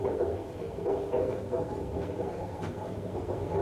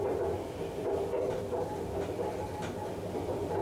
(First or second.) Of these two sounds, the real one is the second